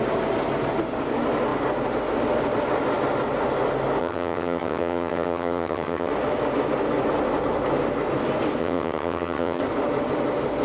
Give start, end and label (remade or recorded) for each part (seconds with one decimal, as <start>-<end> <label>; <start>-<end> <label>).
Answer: 0.0-4.0 recorded; 4.0-6.1 remade; 6.1-8.6 recorded; 8.6-9.6 remade; 9.6-10.6 recorded